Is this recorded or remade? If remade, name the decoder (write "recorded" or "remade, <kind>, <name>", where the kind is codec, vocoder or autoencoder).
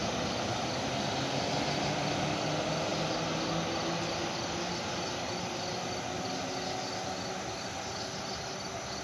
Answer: recorded